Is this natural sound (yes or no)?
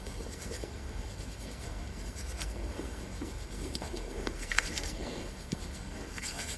no